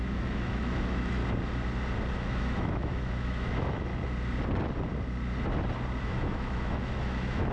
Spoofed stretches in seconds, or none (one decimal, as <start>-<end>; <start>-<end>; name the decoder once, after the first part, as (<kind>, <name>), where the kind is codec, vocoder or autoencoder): 0.0-1.2 (autoencoder, DAC-VAE); 2.1-3.9; 6.0-7.5